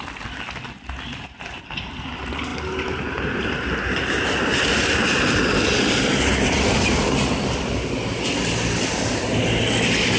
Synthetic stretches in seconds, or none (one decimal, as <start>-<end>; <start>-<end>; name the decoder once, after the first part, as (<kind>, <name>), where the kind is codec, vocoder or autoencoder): none

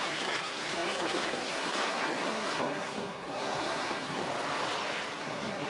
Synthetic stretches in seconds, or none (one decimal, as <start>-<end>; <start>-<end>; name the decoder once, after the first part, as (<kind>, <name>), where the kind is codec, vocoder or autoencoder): 0.0-4.2 (codec, SNAC); 5.2-5.7

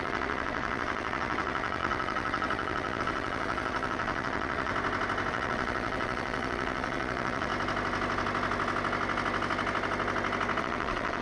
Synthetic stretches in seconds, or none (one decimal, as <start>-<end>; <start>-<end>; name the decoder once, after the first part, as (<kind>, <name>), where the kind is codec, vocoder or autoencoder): 0.0-4.7 (vocoder, WaveNeXt); 5.3-7.5; 10.6-11.2

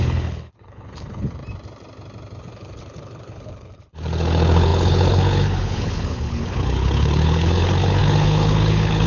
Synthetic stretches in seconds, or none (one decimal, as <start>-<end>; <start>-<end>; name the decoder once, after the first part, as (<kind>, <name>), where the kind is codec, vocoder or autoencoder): 0.0-1.4 (codec, HILCodec); 2.4-9.1

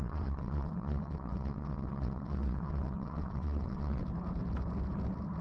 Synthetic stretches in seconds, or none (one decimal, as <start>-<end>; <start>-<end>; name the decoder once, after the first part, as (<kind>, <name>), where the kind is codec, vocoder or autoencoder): 0.0-4.0 (vocoder, WaveNeXt)

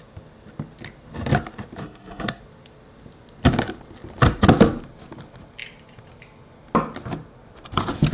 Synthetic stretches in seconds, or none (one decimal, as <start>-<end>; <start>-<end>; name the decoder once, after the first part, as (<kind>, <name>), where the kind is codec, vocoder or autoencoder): 1.8-2.4 (codec, SNAC)